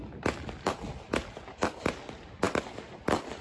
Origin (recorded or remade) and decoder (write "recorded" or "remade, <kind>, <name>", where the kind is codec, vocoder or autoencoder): recorded